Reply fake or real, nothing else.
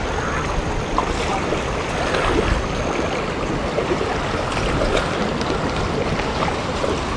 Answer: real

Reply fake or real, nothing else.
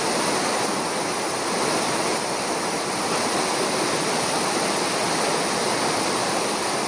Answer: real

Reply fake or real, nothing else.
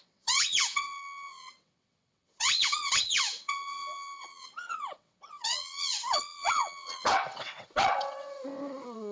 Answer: fake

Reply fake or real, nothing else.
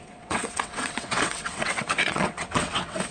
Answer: fake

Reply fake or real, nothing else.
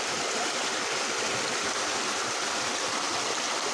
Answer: real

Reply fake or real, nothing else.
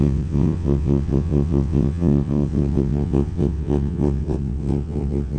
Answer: fake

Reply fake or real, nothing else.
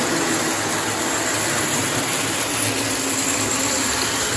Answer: real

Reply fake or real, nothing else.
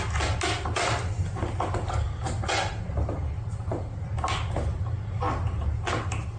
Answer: real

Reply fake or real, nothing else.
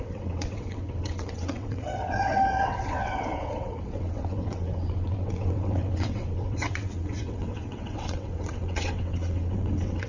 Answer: fake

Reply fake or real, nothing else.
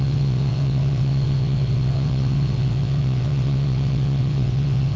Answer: fake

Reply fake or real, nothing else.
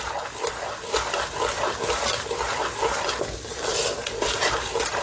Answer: real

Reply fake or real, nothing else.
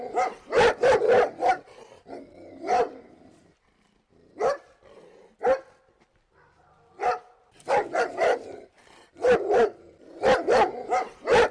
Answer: real